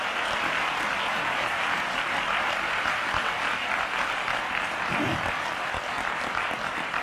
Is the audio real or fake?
real